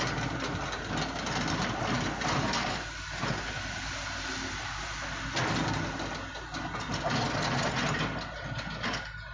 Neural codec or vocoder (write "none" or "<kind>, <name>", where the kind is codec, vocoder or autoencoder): none